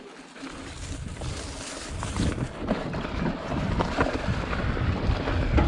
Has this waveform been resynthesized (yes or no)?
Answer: no